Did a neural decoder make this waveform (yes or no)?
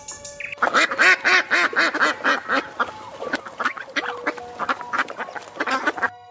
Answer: no